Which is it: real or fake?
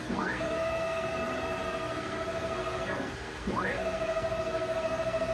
fake